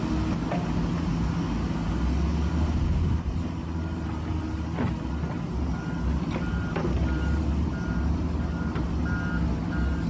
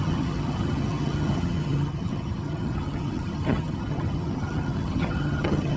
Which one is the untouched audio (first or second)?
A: first